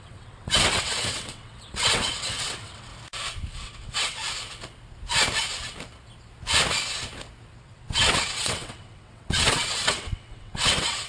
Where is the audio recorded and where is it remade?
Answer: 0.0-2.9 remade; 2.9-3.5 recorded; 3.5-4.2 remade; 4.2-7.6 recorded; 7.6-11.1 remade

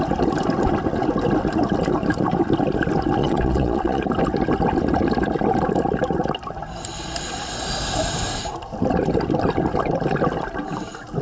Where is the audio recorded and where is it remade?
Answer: 0.0-3.2 recorded; 3.2-4.0 remade; 4.0-11.2 recorded

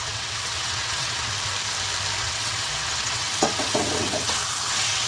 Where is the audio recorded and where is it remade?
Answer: 0.0-1.3 remade; 1.3-2.2 recorded; 2.2-5.1 remade

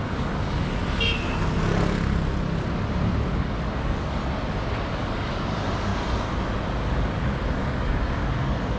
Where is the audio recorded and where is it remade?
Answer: 0.0-0.8 remade; 0.8-3.3 recorded; 3.3-4.2 remade; 4.2-4.9 recorded; 4.9-5.9 remade; 5.9-6.9 recorded; 6.9-8.8 remade